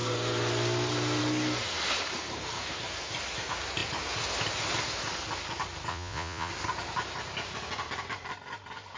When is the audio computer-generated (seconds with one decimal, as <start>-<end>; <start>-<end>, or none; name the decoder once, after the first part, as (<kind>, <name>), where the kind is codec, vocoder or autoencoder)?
5.9-6.5 (vocoder, Vocos)